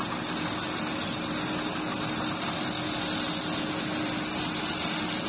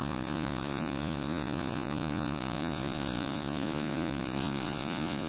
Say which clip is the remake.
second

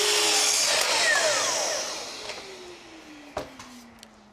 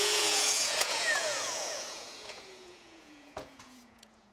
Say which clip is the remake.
second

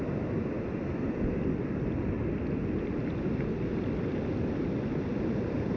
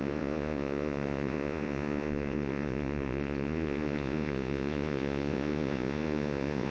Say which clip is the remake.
second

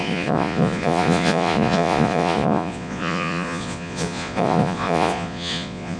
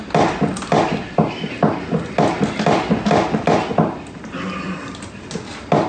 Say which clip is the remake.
first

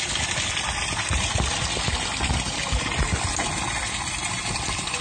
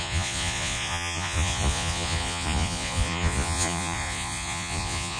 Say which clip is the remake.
second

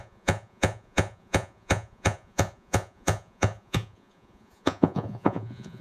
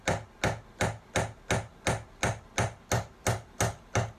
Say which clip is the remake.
first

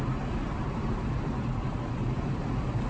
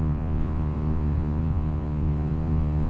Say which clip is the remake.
second